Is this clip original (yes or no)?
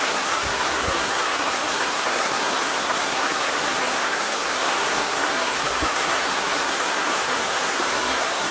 no